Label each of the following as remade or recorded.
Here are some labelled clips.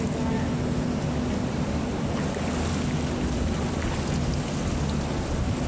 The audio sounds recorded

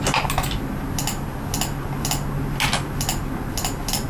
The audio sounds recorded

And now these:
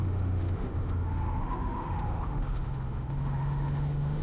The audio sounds remade